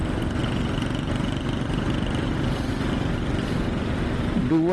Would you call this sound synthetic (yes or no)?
no